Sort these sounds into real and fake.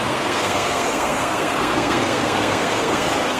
fake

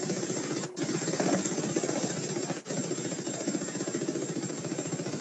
real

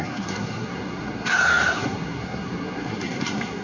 fake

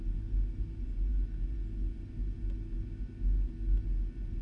real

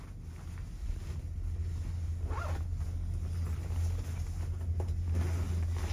real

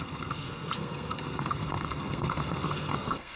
fake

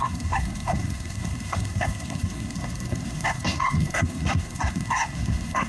fake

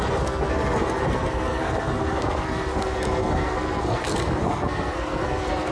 fake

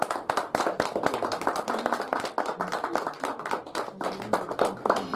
real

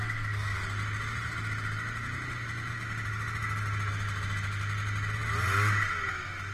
real